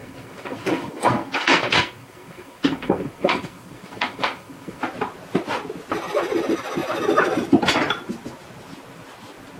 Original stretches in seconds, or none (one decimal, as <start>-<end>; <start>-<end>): 4.8-9.6